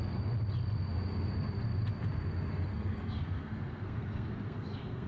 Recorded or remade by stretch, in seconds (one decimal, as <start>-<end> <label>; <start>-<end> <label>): 0.0-2.7 recorded; 2.7-5.1 remade